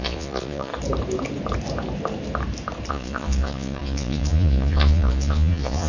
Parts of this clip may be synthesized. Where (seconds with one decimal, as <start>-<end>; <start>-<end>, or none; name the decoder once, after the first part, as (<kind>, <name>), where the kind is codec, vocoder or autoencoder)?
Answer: 0.0-0.7 (vocoder, Vocos); 2.9-5.9